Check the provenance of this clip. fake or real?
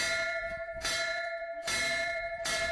fake